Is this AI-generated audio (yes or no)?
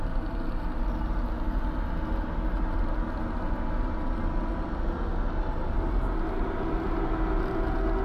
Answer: no